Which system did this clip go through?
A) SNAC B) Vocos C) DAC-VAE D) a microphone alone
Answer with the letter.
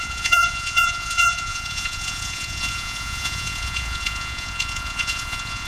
B